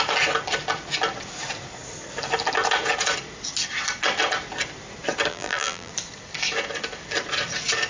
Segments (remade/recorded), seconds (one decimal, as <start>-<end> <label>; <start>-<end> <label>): 0.0-5.3 recorded; 5.3-5.9 remade; 5.9-7.9 recorded